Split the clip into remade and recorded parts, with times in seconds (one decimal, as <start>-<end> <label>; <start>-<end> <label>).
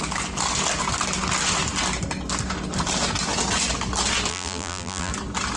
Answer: 0.0-4.3 recorded; 4.3-5.1 remade; 5.1-5.6 recorded